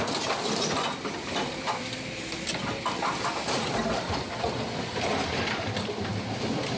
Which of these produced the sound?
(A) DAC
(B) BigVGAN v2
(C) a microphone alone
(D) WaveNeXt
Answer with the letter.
B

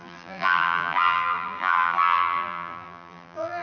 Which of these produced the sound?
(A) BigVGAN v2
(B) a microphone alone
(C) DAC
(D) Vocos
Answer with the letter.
A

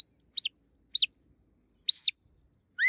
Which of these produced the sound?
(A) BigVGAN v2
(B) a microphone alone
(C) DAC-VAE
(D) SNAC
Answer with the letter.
B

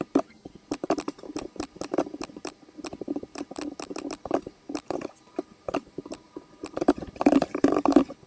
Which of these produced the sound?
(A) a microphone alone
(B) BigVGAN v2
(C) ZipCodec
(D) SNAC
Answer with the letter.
B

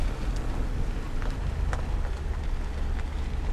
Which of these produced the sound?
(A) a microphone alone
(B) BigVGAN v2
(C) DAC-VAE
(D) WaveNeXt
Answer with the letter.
A